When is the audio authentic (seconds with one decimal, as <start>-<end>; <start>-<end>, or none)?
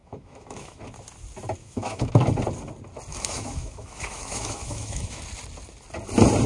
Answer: 0.8-1.6; 2.1-3.1; 5.2-6.5